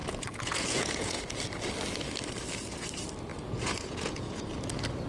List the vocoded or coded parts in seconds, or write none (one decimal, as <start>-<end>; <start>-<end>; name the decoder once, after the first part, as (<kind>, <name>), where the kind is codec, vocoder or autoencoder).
0.0-1.2 (vocoder, Vocos); 3.3-4.4